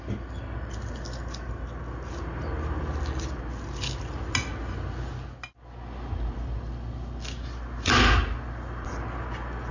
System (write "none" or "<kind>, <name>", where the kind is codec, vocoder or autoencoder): none